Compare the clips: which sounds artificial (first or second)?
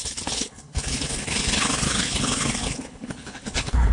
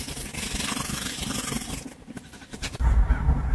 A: first